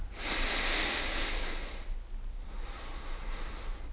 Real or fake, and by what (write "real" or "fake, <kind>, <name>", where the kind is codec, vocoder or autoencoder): real